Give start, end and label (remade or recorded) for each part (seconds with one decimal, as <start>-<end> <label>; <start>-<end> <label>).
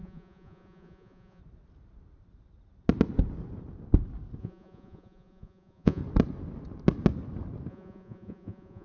0.0-1.4 remade; 1.4-4.4 recorded; 4.4-6.0 remade; 6.0-7.7 recorded; 7.7-8.8 remade